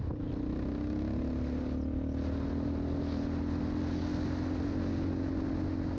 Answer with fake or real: real